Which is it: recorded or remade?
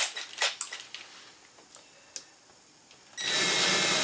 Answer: recorded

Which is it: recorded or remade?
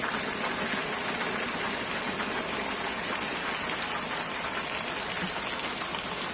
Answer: recorded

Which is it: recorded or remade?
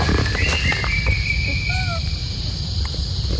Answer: recorded